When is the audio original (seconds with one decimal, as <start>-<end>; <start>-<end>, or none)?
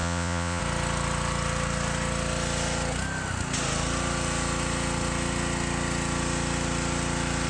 0.6-7.5